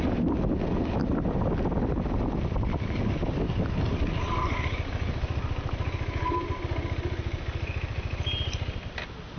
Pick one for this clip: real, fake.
real